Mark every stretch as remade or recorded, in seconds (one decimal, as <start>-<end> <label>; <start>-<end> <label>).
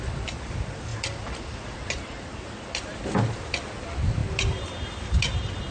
0.0-5.7 recorded